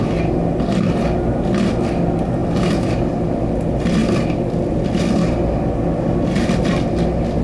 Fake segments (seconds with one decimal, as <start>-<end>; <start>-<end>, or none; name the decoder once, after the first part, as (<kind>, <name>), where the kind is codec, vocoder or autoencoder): 4.0-5.0 (vocoder, BigVGAN v2)